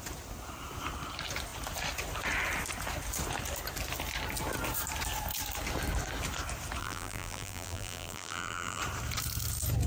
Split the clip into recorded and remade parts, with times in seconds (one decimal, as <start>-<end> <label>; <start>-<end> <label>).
0.0-6.8 recorded; 6.8-8.8 remade; 8.8-9.9 recorded